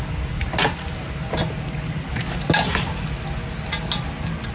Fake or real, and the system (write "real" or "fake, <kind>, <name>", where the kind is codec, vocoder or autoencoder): real